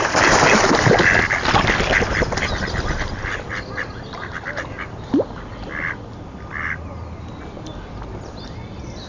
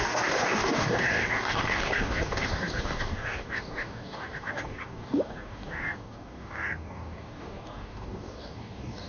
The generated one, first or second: second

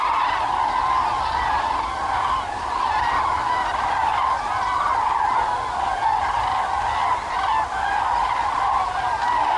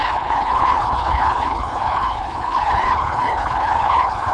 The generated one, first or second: second